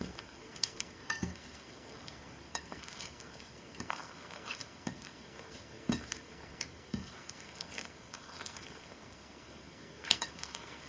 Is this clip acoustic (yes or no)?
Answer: no